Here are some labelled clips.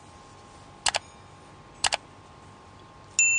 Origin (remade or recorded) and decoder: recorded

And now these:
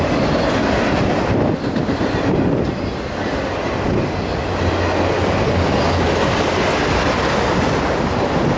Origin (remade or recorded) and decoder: recorded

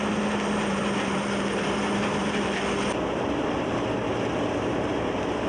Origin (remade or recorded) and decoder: remade, vocoder, BigVGAN v2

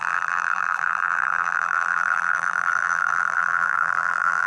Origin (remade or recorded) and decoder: remade, vocoder, BigVGAN v2